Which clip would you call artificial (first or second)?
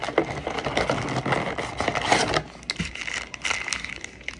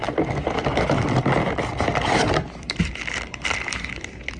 second